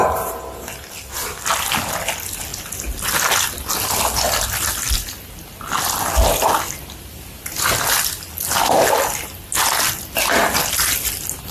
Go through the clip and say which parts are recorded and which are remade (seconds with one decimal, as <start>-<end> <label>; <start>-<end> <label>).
0.0-11.5 recorded